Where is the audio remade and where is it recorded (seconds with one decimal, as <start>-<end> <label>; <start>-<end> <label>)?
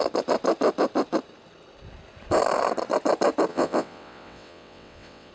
0.0-3.5 recorded; 3.5-5.3 remade